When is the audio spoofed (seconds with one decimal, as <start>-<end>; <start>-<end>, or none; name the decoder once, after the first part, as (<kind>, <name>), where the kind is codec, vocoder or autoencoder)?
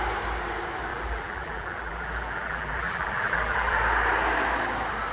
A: 0.9-3.8 (vocoder, BigVGAN v2)